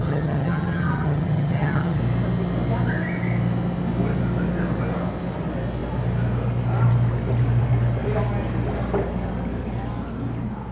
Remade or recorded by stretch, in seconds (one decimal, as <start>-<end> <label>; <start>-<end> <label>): 0.0-2.0 remade; 2.0-10.7 recorded